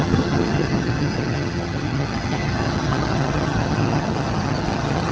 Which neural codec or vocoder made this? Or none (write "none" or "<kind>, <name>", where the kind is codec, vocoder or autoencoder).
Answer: vocoder, HiFi-GAN